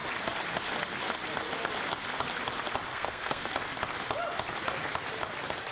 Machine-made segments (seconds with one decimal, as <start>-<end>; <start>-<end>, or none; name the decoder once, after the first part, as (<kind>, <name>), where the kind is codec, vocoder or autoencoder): 2.9-3.5 (codec, SNAC)